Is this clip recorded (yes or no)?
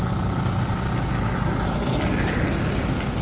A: yes